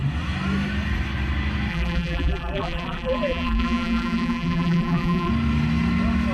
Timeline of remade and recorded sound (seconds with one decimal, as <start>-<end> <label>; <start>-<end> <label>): 0.0-1.7 recorded; 1.7-5.3 remade; 5.3-6.3 recorded